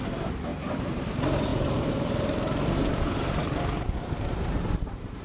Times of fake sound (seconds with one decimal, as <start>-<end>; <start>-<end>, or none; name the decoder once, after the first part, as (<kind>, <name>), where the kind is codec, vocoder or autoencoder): 0.0-5.2 (vocoder, BigVGAN v2)